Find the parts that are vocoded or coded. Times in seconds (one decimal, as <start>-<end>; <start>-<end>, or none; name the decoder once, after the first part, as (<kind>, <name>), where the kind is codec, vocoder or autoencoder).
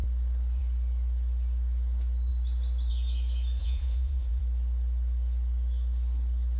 3.6-4.4 (vocoder, Vocos)